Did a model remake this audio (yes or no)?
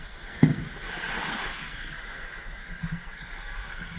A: yes